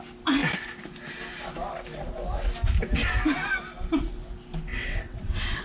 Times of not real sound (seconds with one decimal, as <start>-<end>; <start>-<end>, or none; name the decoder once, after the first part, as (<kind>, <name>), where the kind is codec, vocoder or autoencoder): 4.7-5.6 (vocoder, WaveNeXt)